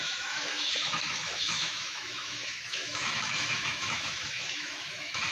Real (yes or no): no